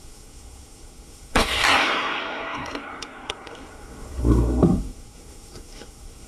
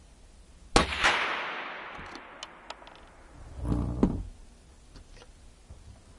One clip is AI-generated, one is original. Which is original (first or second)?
second